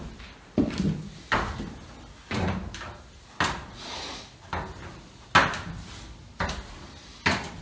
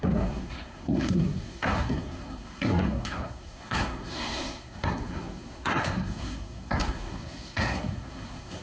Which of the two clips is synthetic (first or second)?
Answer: second